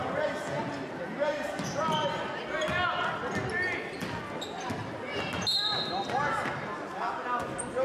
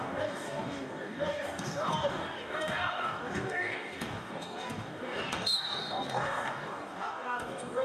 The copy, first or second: second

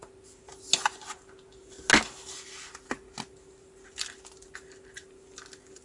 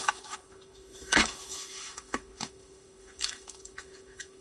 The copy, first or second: second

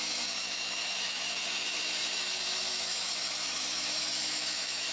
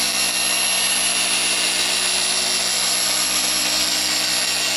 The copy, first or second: first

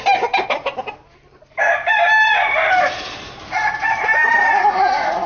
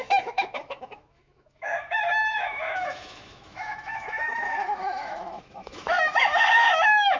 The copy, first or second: second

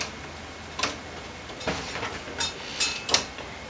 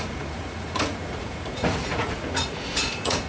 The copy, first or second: second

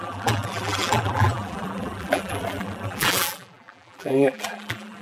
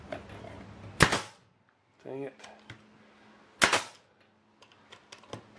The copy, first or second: first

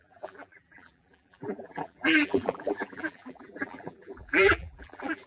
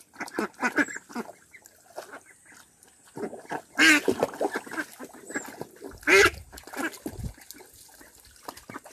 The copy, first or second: first